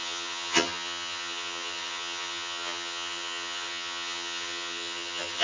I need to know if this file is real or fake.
fake